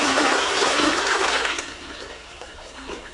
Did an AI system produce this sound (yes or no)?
yes